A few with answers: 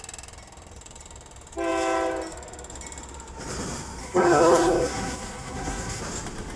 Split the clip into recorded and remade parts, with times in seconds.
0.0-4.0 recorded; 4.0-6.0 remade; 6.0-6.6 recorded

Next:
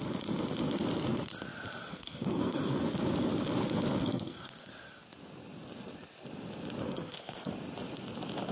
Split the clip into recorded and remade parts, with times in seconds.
0.0-1.8 recorded; 1.8-2.8 remade; 2.8-4.0 recorded; 4.0-4.7 remade; 4.7-6.8 recorded; 6.8-7.5 remade; 7.5-8.5 recorded

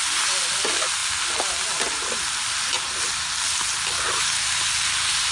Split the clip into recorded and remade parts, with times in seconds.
0.0-5.3 recorded

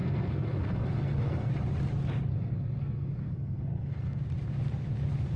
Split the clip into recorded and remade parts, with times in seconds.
0.0-1.5 remade; 1.5-2.3 recorded; 2.3-4.2 remade; 4.2-5.4 recorded

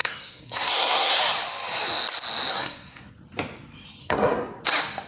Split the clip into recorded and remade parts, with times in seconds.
0.0-1.2 remade; 1.2-2.5 recorded; 2.5-3.1 remade; 3.1-4.0 recorded; 4.0-4.6 remade; 4.6-5.1 recorded

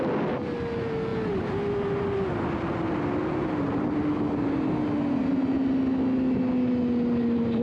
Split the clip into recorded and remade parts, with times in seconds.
0.0-7.6 recorded

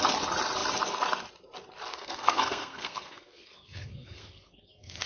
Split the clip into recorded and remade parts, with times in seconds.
0.0-1.9 recorded; 1.9-5.1 remade